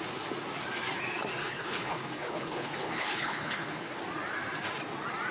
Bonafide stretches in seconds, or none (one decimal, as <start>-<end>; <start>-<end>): 0.0-1.4; 4.0-5.3